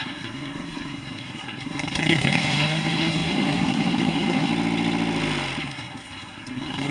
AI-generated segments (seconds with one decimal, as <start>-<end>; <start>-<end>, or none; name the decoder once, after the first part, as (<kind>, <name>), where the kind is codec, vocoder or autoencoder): 0.0-4.5 (codec, SNAC); 5.6-6.9